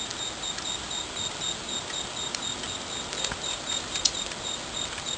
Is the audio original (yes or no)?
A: yes